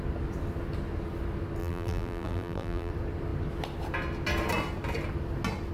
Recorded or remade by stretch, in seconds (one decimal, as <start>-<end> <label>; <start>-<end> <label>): 0.0-1.6 recorded; 1.6-2.9 remade; 2.9-5.7 recorded